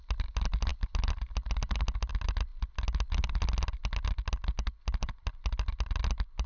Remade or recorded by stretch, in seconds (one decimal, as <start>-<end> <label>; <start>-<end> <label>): 0.0-6.5 recorded